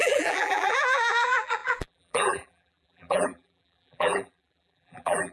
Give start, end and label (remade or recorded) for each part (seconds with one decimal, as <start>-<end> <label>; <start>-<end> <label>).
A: 0.0-5.3 remade